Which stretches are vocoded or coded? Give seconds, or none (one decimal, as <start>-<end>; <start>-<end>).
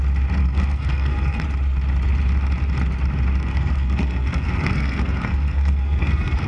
0.4-1.4; 3.4-6.5